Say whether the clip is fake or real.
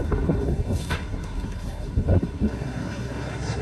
fake